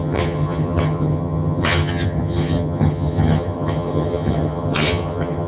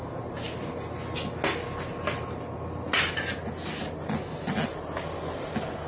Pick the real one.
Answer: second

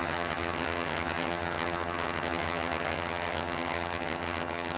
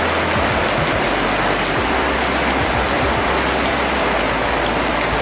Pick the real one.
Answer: second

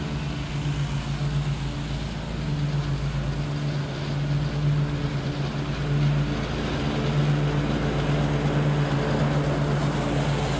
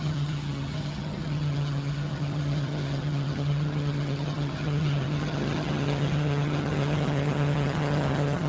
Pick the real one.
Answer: first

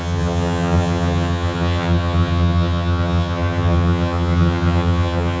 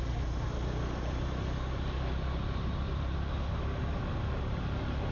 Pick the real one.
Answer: second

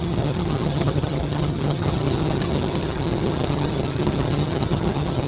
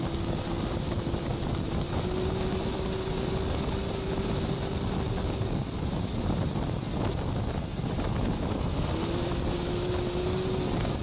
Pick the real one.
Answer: second